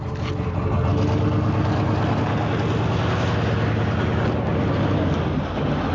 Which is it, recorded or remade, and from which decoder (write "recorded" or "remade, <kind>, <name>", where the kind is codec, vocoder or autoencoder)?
recorded